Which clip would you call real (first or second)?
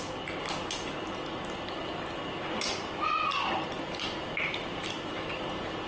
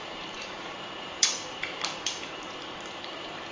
first